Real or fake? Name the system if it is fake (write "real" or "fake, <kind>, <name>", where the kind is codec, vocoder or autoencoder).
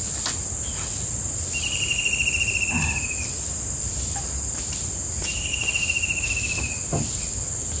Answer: real